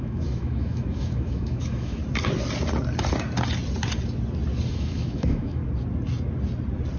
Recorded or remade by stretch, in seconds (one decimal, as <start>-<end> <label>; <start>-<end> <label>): 0.0-2.0 remade; 2.0-4.7 recorded; 4.7-5.6 remade; 5.6-7.0 recorded